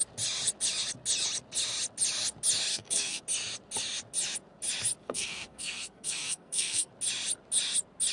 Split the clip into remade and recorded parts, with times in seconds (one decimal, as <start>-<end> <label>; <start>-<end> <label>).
0.0-2.7 recorded; 2.7-3.2 remade; 3.2-5.0 recorded; 5.0-6.9 remade; 6.9-8.1 recorded